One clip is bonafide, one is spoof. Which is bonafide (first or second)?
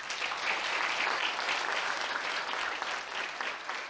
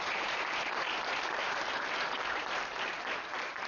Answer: first